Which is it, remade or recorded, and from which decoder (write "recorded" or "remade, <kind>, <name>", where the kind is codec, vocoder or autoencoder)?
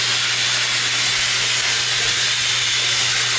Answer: recorded